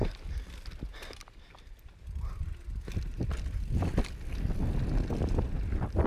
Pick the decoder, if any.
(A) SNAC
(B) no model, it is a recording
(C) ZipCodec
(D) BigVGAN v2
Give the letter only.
B